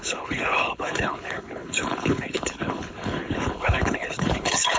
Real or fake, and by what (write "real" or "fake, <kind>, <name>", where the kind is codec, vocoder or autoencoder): fake, codec, HILCodec